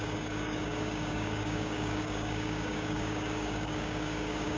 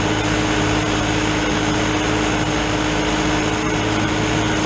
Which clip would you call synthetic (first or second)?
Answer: first